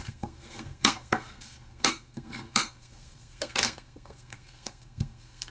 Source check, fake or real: fake